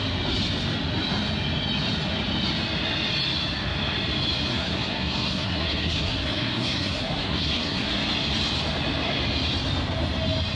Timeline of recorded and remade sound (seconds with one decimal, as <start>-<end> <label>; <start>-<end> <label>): 0.0-4.5 recorded; 4.5-7.9 remade; 7.9-10.6 recorded